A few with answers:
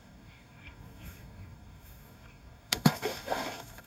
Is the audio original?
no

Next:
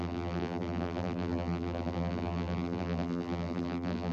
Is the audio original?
no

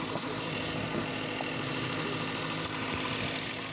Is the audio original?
yes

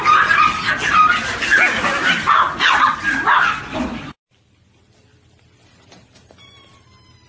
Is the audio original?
no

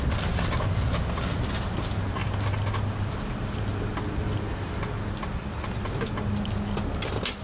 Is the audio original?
yes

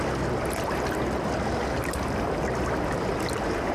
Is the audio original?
yes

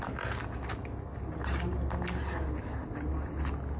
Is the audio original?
yes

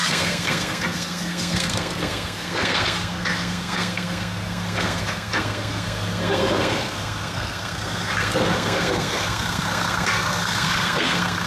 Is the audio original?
no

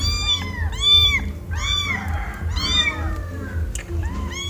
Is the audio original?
yes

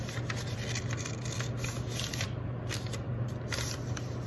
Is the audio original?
yes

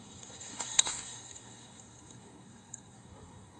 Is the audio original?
no